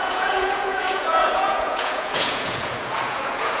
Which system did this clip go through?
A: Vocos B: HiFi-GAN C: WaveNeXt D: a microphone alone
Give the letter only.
A